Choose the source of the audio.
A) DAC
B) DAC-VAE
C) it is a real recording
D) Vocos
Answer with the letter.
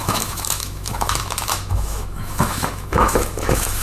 B